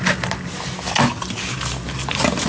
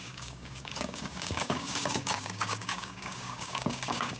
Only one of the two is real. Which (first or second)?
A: first